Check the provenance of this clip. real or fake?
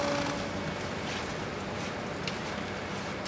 real